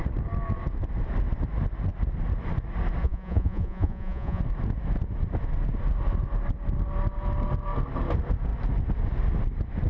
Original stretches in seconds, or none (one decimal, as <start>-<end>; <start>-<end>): 0.0-3.0; 4.4-9.9